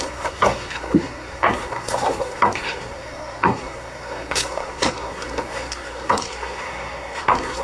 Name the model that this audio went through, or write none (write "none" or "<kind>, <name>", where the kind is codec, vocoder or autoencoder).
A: codec, SNAC